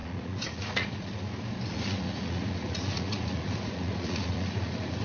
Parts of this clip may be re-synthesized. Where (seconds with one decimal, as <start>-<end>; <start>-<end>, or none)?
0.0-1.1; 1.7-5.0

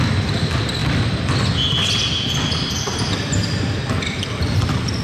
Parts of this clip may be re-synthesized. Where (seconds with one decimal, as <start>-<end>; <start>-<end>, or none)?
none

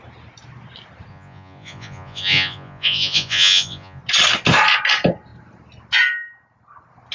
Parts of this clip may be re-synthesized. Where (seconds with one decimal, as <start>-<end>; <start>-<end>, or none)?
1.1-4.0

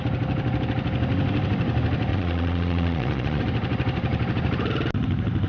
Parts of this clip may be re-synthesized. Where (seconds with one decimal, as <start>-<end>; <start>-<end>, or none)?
2.1-3.4

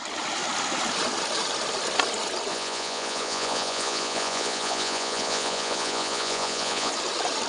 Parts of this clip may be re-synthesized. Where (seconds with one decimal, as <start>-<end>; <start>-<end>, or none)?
2.5-6.9